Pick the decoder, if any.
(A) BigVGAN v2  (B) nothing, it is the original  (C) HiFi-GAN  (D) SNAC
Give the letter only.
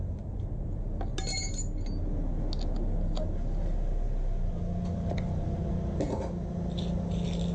B